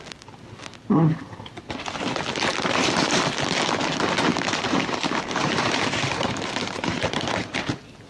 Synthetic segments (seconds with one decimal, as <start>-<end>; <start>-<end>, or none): 2.5-3.2; 4.3-7.6